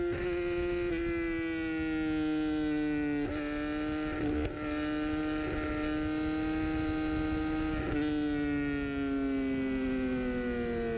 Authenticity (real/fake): real